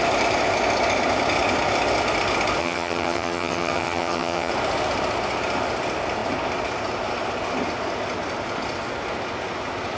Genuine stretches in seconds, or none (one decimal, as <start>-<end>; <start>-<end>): 0.0-2.6; 4.5-10.0